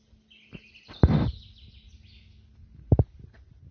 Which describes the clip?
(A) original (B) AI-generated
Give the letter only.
A